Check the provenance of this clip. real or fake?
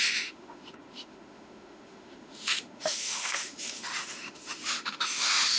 fake